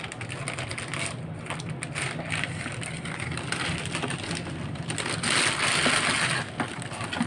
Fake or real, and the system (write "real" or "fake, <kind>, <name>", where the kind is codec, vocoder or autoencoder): real